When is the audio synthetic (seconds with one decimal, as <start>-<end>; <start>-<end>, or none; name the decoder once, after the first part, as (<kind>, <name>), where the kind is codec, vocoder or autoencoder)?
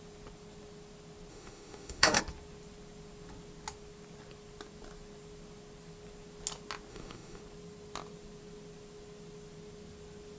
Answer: 1.3-2.2 (autoencoder, DAC-VAE); 6.9-7.4